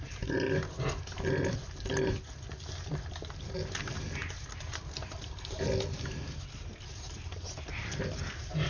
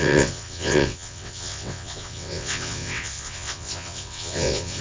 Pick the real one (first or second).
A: first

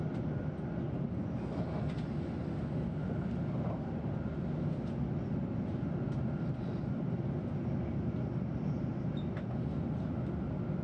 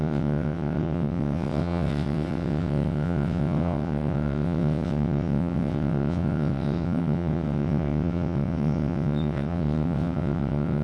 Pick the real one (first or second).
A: first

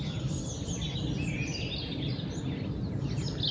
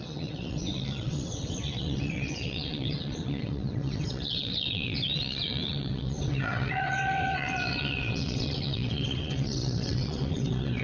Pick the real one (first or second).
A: first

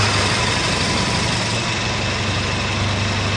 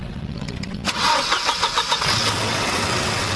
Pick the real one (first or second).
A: first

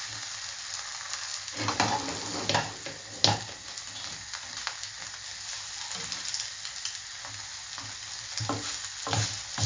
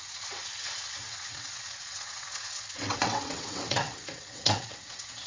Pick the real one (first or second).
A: first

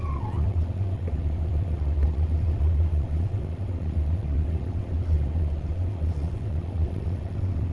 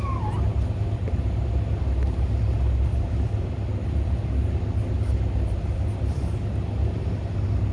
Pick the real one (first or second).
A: second